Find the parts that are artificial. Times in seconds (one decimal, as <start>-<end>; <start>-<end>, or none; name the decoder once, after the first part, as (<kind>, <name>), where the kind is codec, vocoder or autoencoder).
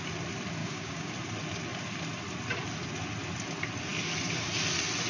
0.6-1.1 (codec, DAC)